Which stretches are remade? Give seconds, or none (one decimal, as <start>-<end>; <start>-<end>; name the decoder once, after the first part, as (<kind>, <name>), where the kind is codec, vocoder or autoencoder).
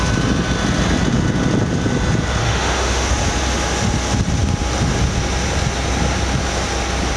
2.4-3.1 (autoencoder, DAC-VAE)